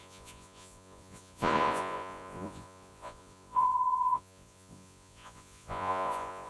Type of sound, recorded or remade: remade